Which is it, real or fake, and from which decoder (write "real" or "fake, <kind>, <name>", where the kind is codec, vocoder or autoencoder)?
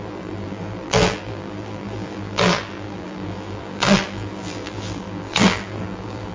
fake, vocoder, BigVGAN v2